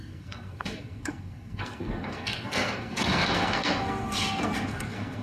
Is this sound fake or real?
fake